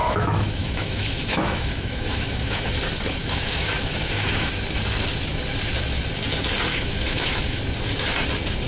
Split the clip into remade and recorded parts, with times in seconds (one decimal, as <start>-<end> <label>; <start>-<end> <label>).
0.0-2.7 remade; 2.7-3.2 recorded; 3.2-4.5 remade; 4.5-6.7 recorded; 6.7-7.6 remade; 7.6-8.7 recorded